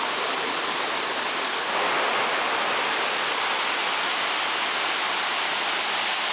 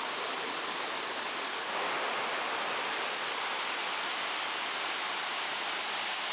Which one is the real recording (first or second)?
first